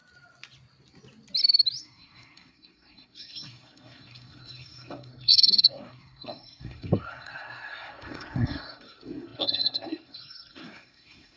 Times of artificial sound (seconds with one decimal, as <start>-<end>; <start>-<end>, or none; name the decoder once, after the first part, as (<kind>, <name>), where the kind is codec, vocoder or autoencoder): 1.8-11.4 (codec, SNAC)